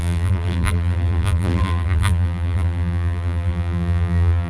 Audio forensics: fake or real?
fake